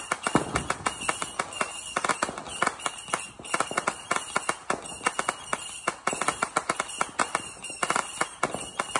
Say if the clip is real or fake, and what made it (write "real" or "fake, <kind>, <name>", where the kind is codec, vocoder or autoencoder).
real